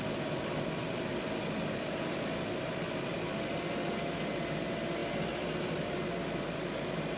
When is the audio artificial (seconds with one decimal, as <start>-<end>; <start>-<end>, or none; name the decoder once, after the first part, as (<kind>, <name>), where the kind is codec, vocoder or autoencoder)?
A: none